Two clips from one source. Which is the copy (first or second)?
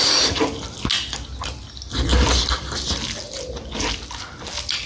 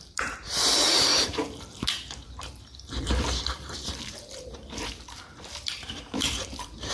second